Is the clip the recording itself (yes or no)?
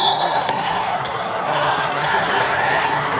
no